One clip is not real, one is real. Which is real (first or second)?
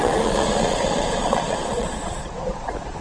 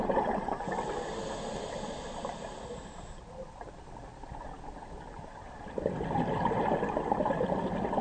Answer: second